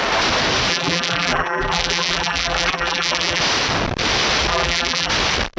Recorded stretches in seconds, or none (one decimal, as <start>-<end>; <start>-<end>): 0.0-0.7; 3.4-4.5; 5.1-5.6